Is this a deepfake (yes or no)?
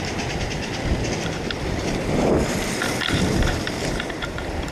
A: yes